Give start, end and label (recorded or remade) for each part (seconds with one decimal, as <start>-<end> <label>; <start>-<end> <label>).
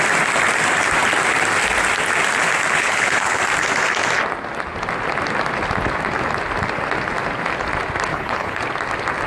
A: 0.0-2.7 recorded; 2.7-3.4 remade; 3.4-8.1 recorded; 8.1-8.6 remade; 8.6-9.3 recorded